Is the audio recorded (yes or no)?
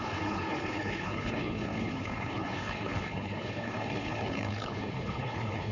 no